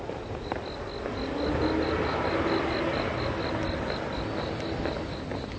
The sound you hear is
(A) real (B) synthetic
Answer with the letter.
A